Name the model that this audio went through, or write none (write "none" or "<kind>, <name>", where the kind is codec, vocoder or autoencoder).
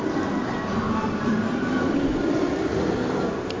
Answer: vocoder, BigVGAN v2